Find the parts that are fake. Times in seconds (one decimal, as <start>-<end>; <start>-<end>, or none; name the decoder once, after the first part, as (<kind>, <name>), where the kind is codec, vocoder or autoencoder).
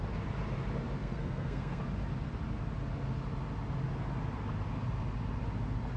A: 1.0-1.8 (codec, SNAC)